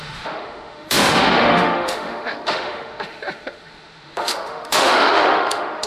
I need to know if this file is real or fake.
fake